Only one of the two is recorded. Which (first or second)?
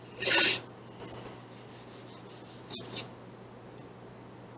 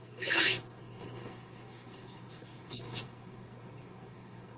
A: first